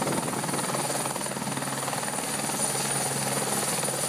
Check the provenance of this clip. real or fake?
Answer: real